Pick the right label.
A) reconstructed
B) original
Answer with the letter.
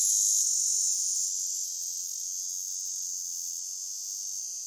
B